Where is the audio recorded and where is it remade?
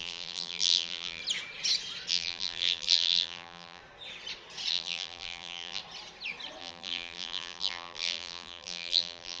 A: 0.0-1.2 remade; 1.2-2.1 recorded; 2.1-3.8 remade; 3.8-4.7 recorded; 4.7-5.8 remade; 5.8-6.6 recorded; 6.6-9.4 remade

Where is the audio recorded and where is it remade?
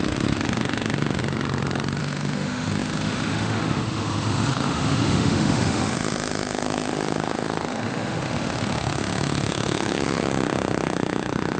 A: 0.0-1.2 remade; 1.2-2.0 recorded; 2.0-11.6 remade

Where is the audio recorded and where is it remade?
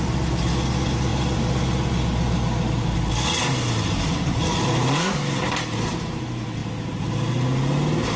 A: 0.0-8.2 recorded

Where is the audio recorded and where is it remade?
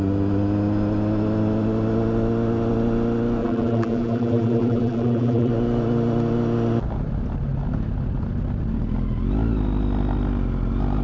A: 0.0-3.4 recorded; 3.4-5.5 remade; 5.5-11.0 recorded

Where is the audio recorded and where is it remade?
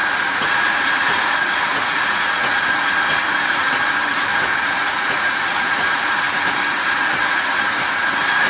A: 0.0-3.7 remade; 3.7-4.3 recorded; 4.3-8.1 remade; 8.1-8.5 recorded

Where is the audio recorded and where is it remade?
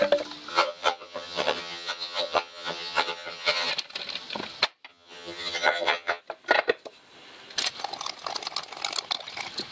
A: 0.0-0.5 recorded; 0.5-3.7 remade; 3.7-4.9 recorded; 4.9-6.2 remade; 6.2-9.7 recorded